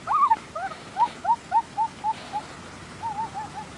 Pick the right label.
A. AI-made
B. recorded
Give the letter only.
B